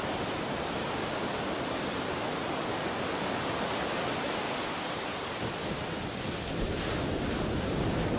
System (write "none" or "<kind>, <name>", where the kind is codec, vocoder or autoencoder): none